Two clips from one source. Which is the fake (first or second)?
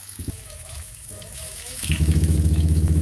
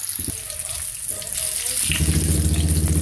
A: first